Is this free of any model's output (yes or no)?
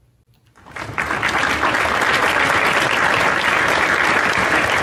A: yes